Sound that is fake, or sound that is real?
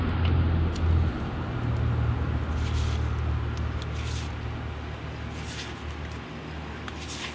real